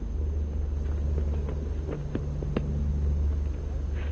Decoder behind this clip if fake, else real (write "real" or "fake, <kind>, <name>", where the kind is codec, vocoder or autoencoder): real